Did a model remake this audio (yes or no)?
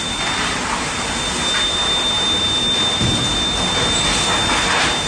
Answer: yes